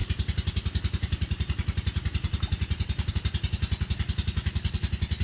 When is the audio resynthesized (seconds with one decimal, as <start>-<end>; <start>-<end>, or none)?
none